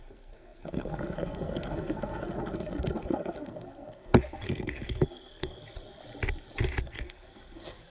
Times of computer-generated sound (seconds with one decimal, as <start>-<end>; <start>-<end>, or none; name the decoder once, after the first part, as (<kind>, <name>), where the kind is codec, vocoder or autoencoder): 0.0-6.0 (codec, SNAC); 6.8-7.9